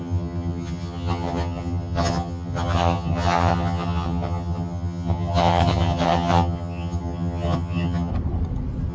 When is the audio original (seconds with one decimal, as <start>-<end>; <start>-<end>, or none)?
8.1-8.9